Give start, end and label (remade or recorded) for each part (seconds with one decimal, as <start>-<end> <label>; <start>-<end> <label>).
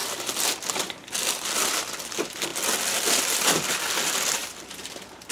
0.0-1.8 remade; 1.8-4.4 recorded; 4.4-5.3 remade